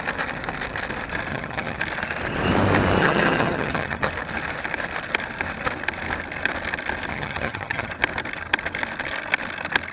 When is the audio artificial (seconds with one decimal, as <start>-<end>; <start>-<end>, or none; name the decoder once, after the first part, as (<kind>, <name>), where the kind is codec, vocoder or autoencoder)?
1.3-1.8 (vocoder, HiFi-GAN); 3.0-4.1; 7.1-7.9